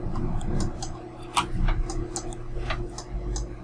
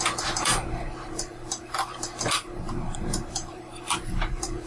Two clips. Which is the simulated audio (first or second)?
second